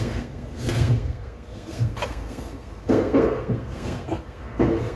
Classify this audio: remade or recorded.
remade